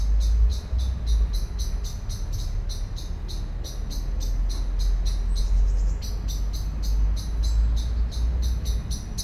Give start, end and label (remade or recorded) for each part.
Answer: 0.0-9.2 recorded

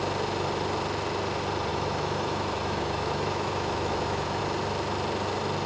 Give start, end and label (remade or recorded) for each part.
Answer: 0.0-1.7 recorded; 1.7-4.4 remade; 4.4-5.7 recorded

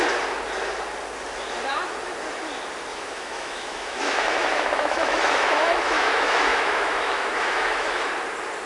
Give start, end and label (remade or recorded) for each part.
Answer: 0.0-2.9 recorded; 2.9-8.1 remade; 8.1-8.7 recorded

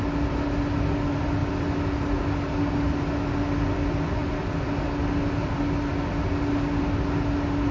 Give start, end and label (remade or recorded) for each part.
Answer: 0.0-7.7 recorded

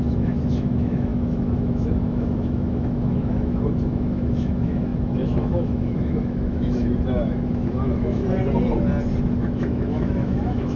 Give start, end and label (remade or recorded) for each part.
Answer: 0.0-8.2 remade; 8.2-9.2 recorded; 9.2-10.8 remade

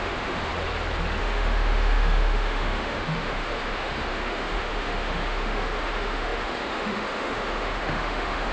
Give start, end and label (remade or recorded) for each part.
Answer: 0.0-0.5 remade; 0.5-1.2 recorded; 1.2-8.5 remade

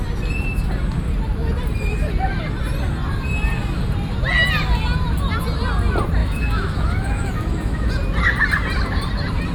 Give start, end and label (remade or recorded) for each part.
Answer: 0.0-6.2 recorded; 6.2-7.9 remade; 7.9-9.5 recorded

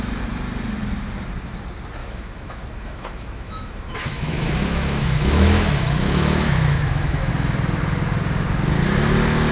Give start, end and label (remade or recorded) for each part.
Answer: 0.0-2.0 recorded; 2.0-7.3 remade; 7.3-9.5 recorded